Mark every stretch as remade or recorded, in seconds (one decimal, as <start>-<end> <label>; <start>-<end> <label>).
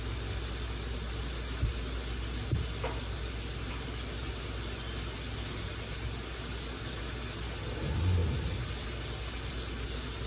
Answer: 0.0-10.3 recorded